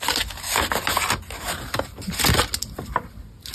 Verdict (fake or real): real